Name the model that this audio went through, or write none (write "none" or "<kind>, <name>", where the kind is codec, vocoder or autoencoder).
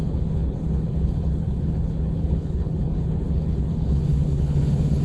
codec, HILCodec